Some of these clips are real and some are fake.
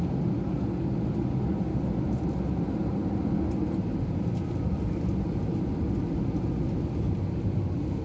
real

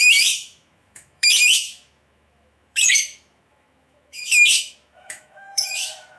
fake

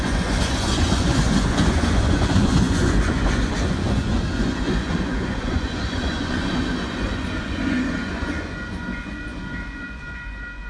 fake